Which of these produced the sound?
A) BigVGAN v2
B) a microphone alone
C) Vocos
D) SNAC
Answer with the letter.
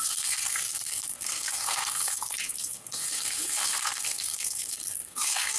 D